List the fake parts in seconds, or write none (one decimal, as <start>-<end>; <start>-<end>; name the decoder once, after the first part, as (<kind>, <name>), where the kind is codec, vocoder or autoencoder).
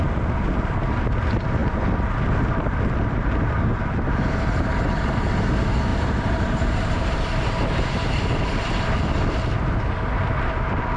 5.9-9.0 (vocoder, BigVGAN v2)